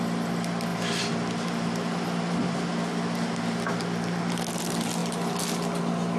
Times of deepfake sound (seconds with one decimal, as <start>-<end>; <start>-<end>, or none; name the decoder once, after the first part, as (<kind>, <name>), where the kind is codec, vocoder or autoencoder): none